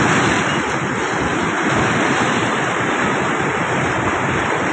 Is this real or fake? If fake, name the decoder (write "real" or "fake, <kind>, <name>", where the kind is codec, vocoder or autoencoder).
real